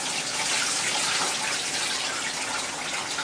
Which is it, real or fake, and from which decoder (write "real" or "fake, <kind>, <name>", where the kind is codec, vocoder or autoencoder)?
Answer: real